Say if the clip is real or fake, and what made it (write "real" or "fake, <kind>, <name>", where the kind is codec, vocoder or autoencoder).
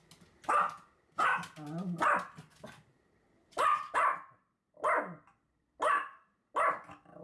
real